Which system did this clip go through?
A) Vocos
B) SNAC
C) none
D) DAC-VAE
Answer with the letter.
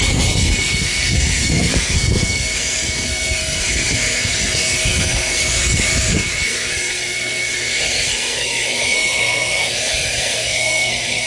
B